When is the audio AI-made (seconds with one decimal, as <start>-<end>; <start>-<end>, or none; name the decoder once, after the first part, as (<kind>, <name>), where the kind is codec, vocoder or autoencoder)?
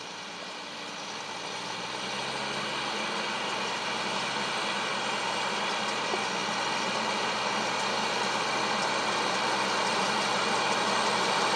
none